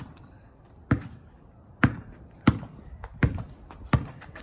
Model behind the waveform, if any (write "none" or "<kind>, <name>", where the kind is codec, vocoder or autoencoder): vocoder, BigVGAN v2